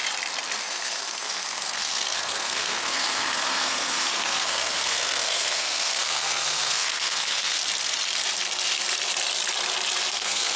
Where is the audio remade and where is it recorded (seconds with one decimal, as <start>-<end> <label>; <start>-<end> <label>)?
0.0-0.6 recorded; 0.6-7.6 remade; 7.6-10.1 recorded; 10.1-10.6 remade

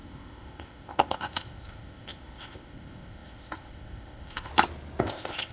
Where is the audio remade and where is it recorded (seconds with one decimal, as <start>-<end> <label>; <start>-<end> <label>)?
0.0-4.5 remade; 4.5-5.0 recorded; 5.0-5.5 remade

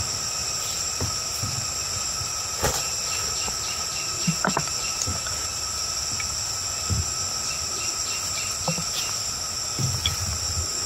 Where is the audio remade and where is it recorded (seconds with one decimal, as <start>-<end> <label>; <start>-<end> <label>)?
0.0-0.4 recorded; 0.4-1.0 remade; 1.0-5.1 recorded; 5.1-5.7 remade; 5.7-10.9 recorded

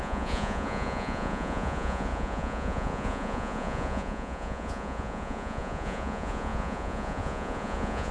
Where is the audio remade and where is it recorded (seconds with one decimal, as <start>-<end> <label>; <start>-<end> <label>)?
0.0-8.1 remade

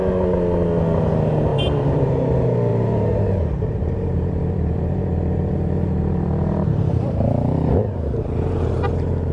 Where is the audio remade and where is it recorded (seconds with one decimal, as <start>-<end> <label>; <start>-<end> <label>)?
0.0-1.5 recorded; 1.5-2.1 remade; 2.1-2.7 recorded; 2.7-7.3 remade; 7.3-9.3 recorded

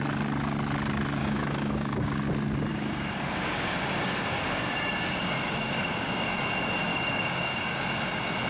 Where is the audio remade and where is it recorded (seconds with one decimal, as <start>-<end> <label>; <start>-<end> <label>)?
0.0-1.2 recorded; 1.2-2.2 remade; 2.2-2.7 recorded; 2.7-6.4 remade; 6.4-6.9 recorded; 6.9-7.8 remade; 7.8-8.5 recorded

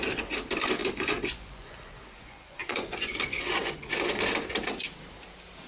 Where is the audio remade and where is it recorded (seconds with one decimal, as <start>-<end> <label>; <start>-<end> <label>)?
0.0-0.8 recorded; 0.8-4.2 remade; 4.2-5.7 recorded